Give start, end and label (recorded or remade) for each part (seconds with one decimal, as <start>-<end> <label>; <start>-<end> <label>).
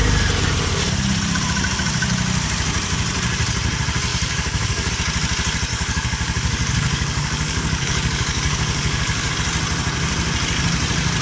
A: 0.0-4.1 recorded; 4.1-4.9 remade; 4.9-5.7 recorded; 5.7-9.3 remade; 9.3-11.2 recorded